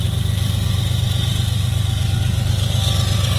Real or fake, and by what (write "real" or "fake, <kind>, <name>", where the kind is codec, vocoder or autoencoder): real